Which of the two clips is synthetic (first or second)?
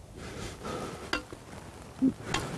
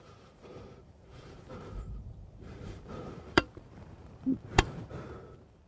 second